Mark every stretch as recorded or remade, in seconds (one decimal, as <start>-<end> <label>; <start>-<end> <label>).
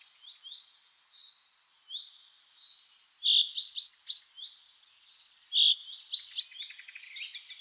0.0-7.6 recorded